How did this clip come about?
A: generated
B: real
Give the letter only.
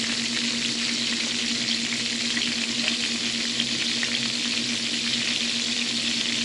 B